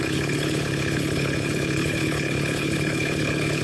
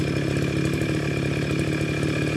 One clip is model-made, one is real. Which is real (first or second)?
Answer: second